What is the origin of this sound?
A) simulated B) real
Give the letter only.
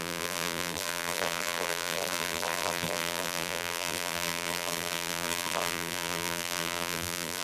A